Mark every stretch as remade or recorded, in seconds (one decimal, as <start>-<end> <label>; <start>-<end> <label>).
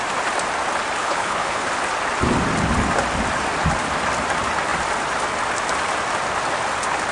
0.0-1.0 recorded; 1.0-1.7 remade; 1.7-7.1 recorded